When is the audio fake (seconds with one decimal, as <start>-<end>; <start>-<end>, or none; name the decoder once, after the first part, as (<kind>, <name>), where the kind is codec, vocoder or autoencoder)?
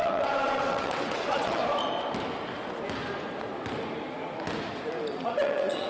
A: 0.0-1.6 (vocoder, WaveNeXt); 5.1-5.9